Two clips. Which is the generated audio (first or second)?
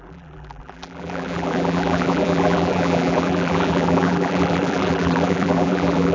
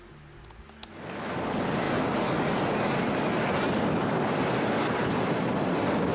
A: first